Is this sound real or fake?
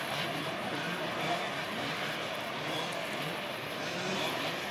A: real